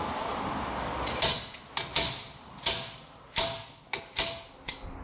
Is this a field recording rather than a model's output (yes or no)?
yes